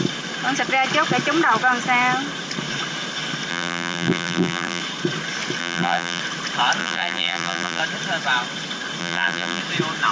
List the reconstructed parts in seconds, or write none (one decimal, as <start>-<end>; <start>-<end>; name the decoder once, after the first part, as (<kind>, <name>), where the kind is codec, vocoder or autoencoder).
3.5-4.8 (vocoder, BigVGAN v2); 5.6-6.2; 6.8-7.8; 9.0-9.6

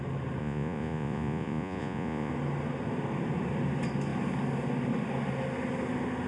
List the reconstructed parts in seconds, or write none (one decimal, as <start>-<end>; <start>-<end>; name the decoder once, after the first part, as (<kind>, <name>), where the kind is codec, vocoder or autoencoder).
0.4-2.3 (vocoder, Vocos)

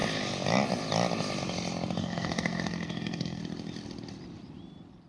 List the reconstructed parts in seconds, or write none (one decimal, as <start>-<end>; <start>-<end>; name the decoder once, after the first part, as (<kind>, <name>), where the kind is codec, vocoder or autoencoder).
2.0-3.4 (codec, SNAC)

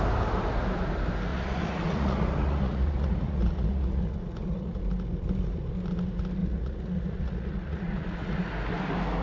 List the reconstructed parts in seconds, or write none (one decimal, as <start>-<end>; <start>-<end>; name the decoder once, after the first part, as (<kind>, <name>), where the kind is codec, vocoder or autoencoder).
1.3-4.8 (vocoder, Vocos); 6.4-8.5

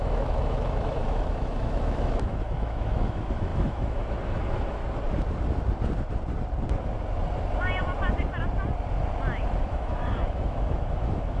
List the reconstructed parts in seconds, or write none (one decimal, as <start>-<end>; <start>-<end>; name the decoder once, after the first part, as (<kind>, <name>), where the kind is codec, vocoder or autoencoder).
0.0-4.8 (autoencoder, DAC-VAE); 9.6-11.4

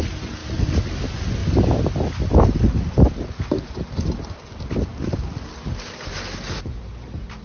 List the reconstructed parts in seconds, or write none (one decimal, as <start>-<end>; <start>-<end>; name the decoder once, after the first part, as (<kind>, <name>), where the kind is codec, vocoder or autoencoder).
none

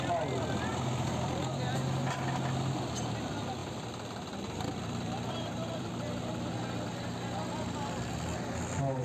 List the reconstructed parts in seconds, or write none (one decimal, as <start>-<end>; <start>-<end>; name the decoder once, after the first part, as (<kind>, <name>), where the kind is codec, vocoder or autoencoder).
0.7-1.8 (vocoder, BigVGAN v2); 3.6-5.9

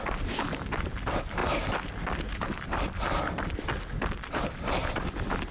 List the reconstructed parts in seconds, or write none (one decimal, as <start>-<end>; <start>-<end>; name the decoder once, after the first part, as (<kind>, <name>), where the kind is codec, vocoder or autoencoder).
0.0-5.5 (vocoder, BigVGAN v2)